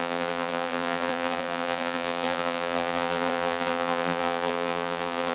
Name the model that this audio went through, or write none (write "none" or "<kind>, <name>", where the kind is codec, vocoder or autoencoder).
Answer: vocoder, BigVGAN v2